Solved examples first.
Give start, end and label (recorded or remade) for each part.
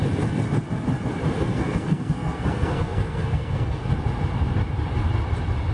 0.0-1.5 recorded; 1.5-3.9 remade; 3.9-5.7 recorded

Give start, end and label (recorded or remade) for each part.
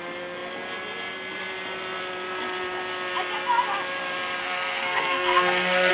0.0-4.4 recorded; 4.4-5.9 remade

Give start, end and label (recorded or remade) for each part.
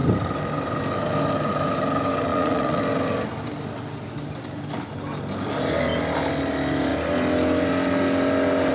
0.0-2.3 recorded; 2.3-2.8 remade; 2.8-8.7 recorded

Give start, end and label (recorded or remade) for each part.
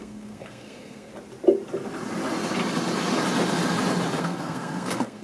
0.0-1.1 remade; 1.1-4.2 recorded; 4.2-5.2 remade